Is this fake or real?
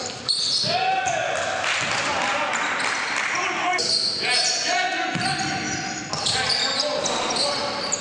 real